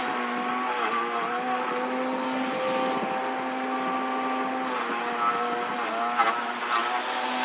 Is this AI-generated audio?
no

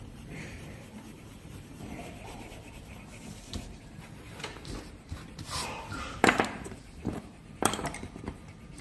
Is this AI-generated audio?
yes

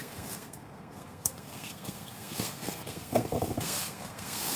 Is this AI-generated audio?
yes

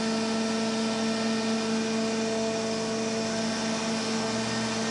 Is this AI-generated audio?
no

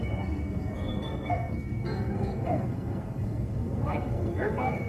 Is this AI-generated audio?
yes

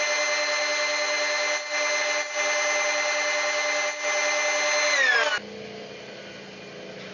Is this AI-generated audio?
no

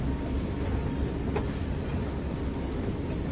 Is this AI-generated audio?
no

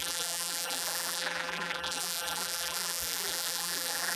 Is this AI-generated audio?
yes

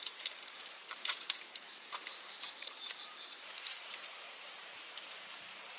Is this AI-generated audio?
yes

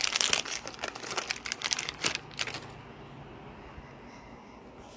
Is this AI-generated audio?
no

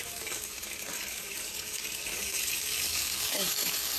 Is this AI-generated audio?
yes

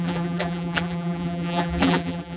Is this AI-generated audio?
yes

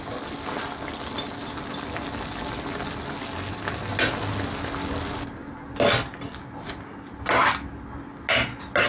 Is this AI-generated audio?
no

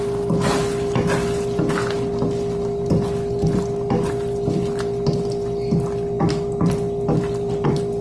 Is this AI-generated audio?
no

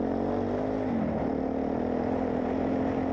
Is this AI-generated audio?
no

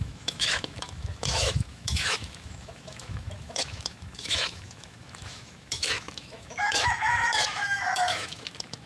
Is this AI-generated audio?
yes